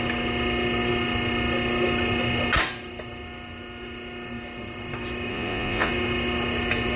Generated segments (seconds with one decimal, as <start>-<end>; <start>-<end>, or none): 5.3-5.9